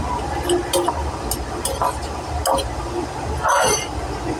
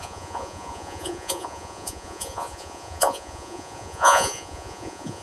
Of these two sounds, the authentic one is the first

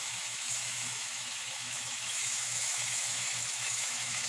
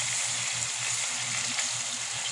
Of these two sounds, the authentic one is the second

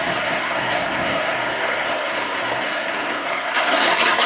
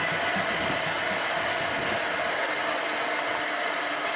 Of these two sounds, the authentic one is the second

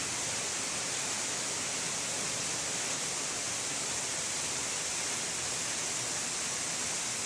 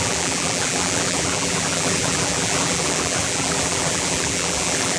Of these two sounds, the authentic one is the first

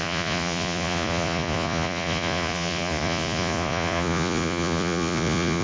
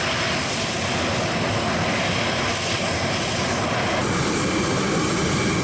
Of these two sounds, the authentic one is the second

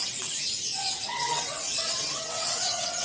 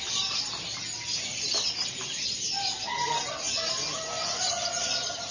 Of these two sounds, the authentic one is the second